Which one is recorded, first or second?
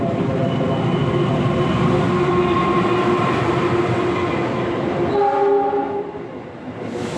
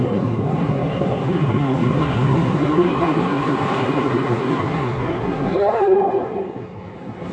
first